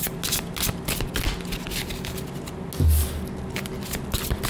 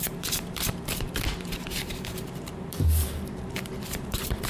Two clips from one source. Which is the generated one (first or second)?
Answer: second